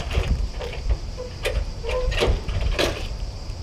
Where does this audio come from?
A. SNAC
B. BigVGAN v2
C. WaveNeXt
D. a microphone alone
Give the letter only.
B